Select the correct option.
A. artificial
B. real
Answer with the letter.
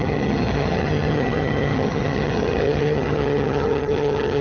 A